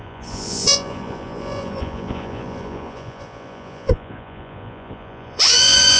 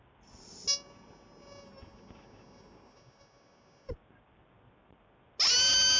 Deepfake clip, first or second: first